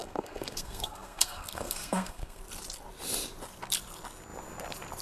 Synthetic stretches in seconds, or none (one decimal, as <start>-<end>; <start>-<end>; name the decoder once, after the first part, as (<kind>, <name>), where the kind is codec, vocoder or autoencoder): 0.0-2.4 (codec, SNAC)